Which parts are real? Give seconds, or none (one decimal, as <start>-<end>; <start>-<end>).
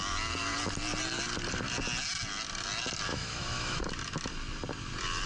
0.0-3.1; 3.8-5.3